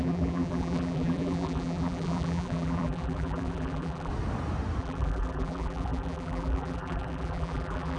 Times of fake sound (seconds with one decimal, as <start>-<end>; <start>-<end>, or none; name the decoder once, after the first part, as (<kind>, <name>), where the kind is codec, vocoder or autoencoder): 0.0-4.1 (vocoder, BigVGAN v2); 4.8-8.0